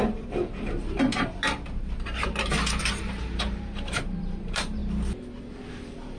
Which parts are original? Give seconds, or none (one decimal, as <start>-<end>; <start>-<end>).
1.4-2.8; 4.8-5.4